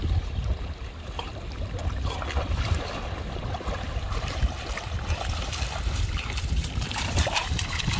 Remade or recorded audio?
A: remade